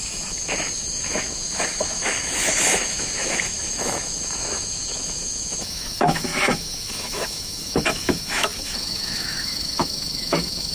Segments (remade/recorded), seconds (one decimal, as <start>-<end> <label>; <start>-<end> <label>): 0.0-10.7 remade